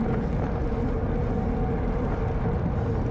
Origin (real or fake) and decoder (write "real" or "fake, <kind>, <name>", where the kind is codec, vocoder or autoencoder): real